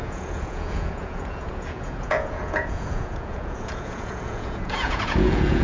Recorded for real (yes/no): no